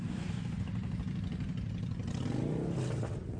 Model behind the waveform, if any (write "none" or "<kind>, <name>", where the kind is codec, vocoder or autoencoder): none